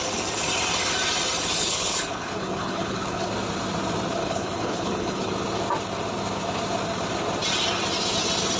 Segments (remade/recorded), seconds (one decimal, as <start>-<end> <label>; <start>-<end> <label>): 0.0-1.6 recorded; 1.6-3.3 remade; 3.3-4.2 recorded; 4.2-5.3 remade; 5.3-8.6 recorded